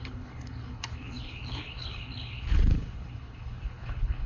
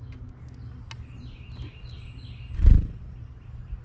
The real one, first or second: second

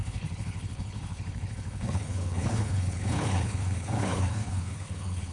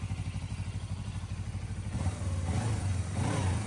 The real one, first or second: second